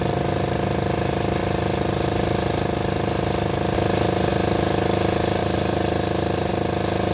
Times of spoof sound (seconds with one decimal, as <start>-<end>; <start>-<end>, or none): 5.4-6.5